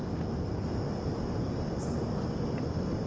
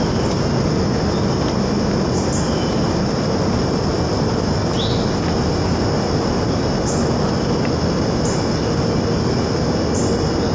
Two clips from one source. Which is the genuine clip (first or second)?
second